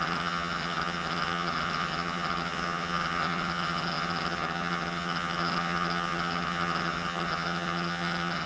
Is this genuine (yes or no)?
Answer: no